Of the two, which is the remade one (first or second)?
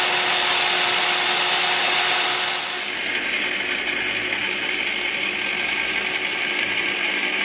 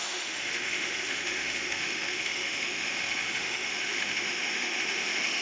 second